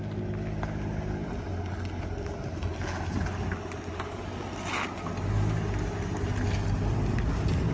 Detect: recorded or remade recorded